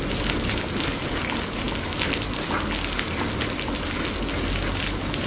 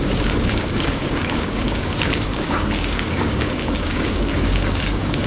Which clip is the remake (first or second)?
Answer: second